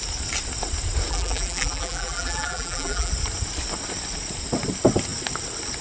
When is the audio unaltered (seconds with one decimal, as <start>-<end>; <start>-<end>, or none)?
0.0-1.1; 3.1-5.8